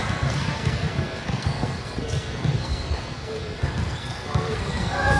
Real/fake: fake